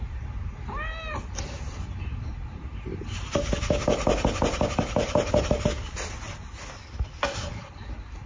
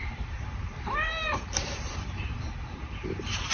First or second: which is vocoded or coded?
second